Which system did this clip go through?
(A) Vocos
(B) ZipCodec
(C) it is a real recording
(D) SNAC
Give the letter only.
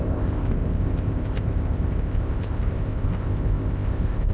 B